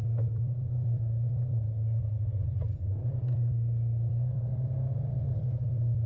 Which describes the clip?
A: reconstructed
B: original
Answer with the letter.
A